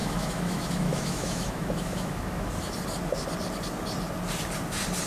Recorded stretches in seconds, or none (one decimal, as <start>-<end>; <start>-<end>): 2.5-5.1